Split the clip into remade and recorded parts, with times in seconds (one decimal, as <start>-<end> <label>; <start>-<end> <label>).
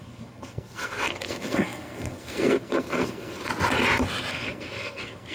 0.0-3.5 remade; 3.5-4.3 recorded; 4.3-5.3 remade